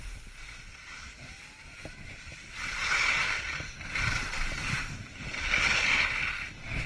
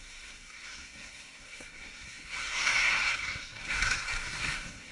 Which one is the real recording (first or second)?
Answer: first